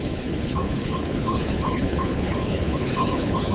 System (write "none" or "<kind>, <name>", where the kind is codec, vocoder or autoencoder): codec, HILCodec